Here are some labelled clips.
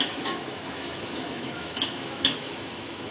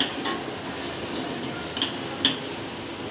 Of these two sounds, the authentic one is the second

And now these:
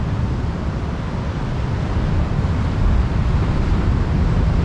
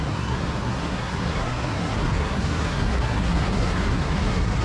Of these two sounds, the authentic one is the first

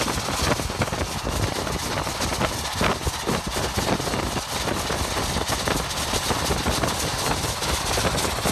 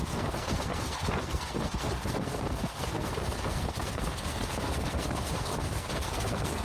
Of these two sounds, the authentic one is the first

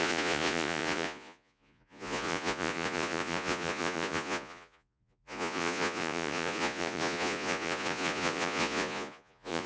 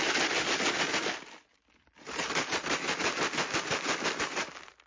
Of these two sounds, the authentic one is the second